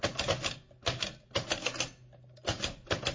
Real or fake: real